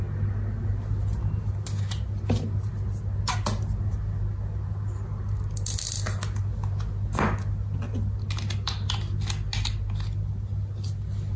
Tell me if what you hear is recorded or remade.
recorded